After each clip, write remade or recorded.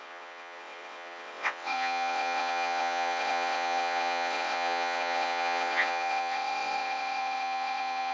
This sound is remade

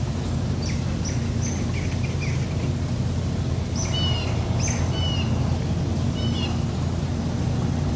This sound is recorded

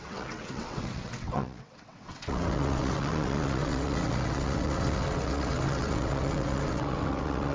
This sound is remade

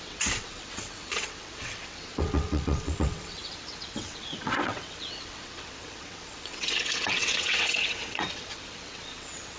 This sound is remade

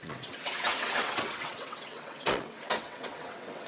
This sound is remade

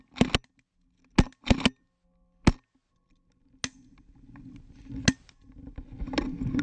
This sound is recorded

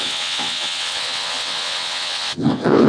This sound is remade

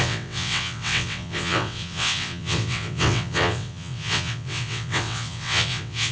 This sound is remade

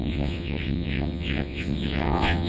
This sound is remade